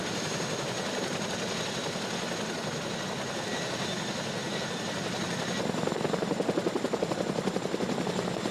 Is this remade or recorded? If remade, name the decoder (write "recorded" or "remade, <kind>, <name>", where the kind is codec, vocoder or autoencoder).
recorded